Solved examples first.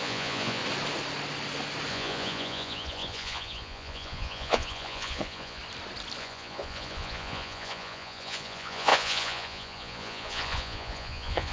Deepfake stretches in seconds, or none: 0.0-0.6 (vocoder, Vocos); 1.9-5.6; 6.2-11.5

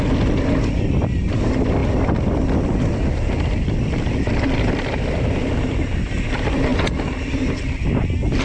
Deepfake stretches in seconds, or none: none

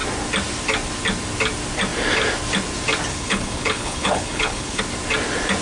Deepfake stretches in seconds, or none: 3.1-4.8 (codec, HILCodec)

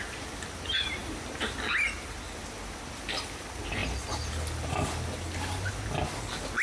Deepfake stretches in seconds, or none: none